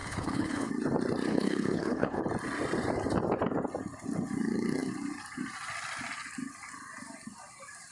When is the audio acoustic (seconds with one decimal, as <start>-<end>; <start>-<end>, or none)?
0.7-1.3; 2.2-7.9